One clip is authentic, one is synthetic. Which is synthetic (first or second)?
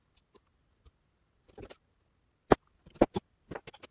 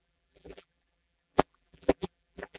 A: second